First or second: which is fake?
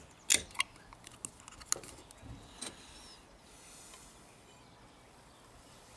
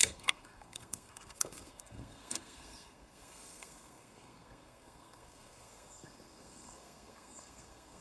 second